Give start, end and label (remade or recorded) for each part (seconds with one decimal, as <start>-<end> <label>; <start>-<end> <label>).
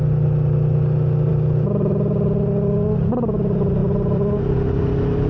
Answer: 0.0-5.3 recorded